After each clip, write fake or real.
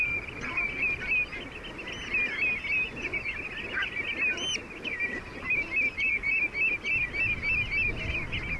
real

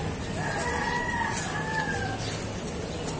real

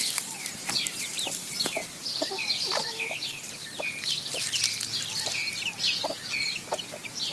real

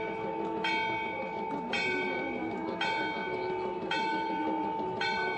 real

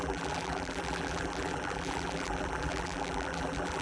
fake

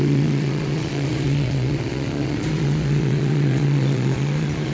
fake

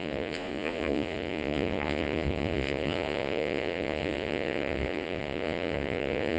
fake